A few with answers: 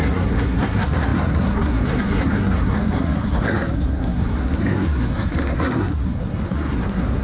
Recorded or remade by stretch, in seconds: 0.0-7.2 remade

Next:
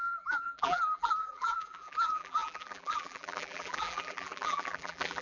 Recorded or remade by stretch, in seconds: 0.0-5.2 remade